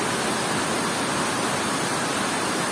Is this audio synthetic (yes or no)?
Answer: no